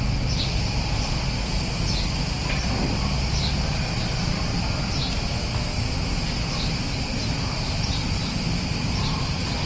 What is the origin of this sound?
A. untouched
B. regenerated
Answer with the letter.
A